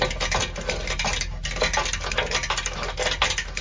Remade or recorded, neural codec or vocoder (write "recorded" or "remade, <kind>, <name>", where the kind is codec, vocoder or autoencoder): recorded